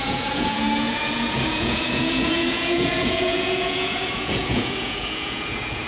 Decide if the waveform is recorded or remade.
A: remade